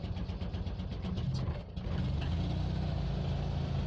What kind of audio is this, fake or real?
real